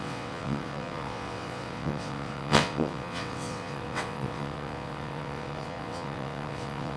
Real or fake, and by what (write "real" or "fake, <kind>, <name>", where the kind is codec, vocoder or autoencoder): fake, vocoder, WaveNeXt